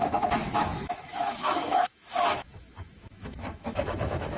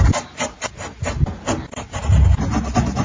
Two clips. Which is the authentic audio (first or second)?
second